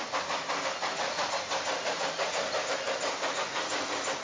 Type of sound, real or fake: real